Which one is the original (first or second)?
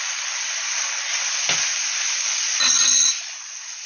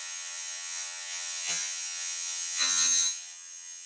first